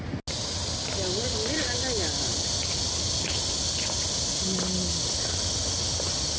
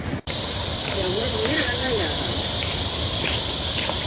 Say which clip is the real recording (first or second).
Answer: first